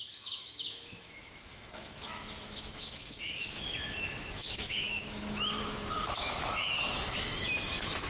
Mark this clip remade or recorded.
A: remade